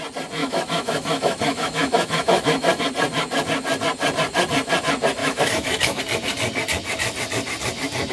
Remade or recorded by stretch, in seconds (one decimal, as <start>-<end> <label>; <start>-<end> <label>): 0.0-0.4 recorded; 0.4-2.8 remade; 2.8-5.2 recorded; 5.2-6.0 remade; 6.0-8.1 recorded